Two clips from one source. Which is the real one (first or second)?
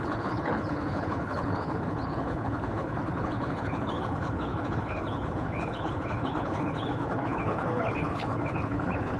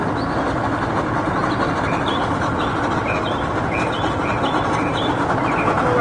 second